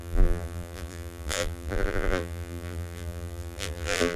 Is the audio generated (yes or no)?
yes